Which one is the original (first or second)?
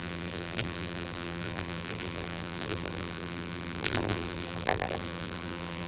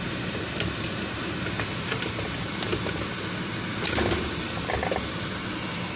second